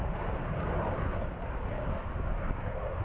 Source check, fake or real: real